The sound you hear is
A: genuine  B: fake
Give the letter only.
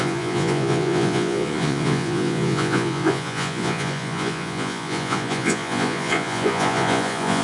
B